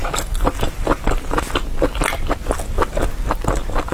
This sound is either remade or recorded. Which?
recorded